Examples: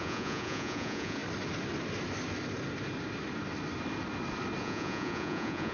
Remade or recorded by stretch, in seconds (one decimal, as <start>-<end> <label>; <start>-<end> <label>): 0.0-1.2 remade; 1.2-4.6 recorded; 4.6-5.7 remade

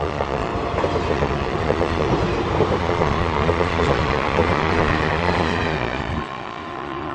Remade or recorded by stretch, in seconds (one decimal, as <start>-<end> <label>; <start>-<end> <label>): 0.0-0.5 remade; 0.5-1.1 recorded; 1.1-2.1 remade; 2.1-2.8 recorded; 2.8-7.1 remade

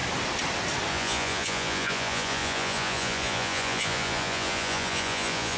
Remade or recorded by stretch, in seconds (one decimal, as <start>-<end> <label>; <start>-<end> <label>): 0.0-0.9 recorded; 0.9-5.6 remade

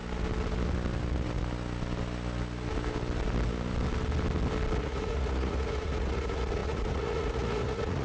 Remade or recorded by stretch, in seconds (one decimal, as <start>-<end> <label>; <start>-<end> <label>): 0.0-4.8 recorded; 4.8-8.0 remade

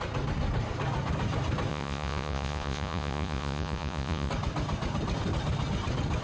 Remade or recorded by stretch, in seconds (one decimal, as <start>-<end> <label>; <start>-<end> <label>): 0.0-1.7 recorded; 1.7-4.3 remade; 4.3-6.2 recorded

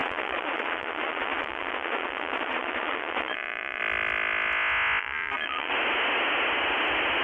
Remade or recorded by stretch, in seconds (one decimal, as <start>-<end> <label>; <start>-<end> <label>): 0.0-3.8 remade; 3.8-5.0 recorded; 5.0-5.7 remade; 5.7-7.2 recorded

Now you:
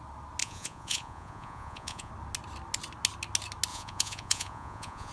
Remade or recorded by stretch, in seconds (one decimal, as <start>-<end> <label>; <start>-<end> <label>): 0.0-0.4 recorded; 0.4-2.1 remade; 2.1-3.7 recorded; 3.7-5.1 remade